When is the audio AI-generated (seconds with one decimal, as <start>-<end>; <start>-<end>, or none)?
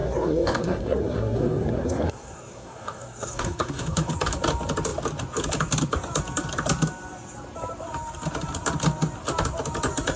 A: 0.0-4.1